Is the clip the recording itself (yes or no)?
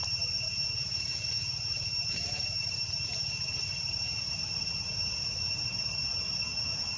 no